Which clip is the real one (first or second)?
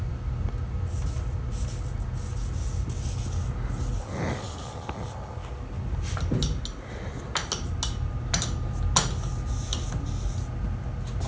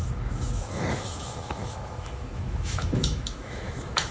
first